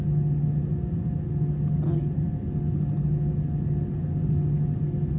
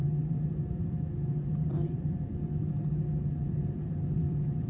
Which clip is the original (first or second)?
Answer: first